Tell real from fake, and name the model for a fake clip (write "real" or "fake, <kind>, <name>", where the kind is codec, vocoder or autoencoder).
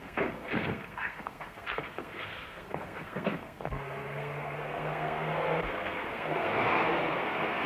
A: fake, codec, SNAC